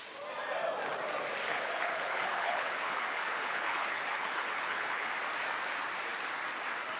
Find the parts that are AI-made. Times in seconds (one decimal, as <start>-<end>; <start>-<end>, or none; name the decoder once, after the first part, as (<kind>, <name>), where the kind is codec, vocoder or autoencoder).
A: 1.5-5.1 (codec, HILCodec)